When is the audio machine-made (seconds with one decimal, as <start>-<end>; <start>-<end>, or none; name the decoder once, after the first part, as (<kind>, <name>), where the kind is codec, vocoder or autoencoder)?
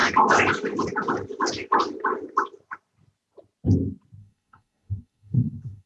4.2-5.9 (codec, SNAC)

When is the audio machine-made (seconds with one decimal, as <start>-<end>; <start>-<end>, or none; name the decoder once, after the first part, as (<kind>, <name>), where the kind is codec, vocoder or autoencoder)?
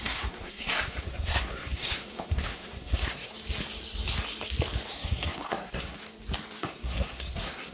0.0-3.3 (codec, SNAC); 4.9-6.0; 6.6-7.7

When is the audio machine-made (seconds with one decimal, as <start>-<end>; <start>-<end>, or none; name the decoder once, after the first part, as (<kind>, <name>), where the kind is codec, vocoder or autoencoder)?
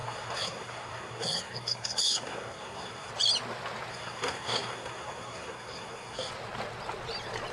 0.0-3.1 (codec, SNAC); 3.9-6.3